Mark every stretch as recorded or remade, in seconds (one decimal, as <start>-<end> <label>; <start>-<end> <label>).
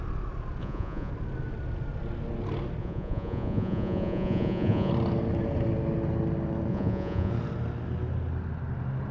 0.0-0.6 recorded; 0.6-1.1 remade; 1.1-2.8 recorded; 2.8-4.9 remade; 4.9-6.7 recorded; 6.7-7.3 remade; 7.3-9.1 recorded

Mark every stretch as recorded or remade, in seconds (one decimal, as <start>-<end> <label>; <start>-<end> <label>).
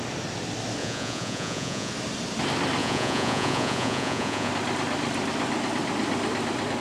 0.0-0.8 recorded; 0.8-1.9 remade; 1.9-2.8 recorded; 2.8-4.5 remade; 4.5-6.8 recorded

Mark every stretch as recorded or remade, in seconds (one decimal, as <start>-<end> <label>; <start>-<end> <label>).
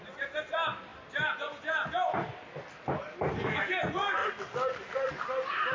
0.0-5.7 recorded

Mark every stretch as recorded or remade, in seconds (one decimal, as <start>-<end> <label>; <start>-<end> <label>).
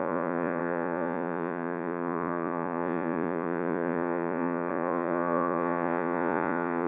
0.0-6.9 remade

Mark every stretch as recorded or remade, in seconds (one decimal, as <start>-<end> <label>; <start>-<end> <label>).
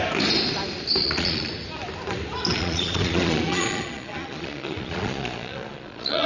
0.0-1.0 recorded; 1.0-1.5 remade; 1.5-2.5 recorded; 2.5-6.3 remade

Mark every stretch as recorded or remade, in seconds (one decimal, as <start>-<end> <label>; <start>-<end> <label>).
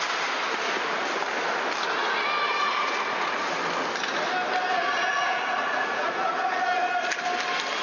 0.0-2.6 recorded; 2.6-3.4 remade; 3.4-4.7 recorded; 4.7-6.9 remade; 6.9-7.8 recorded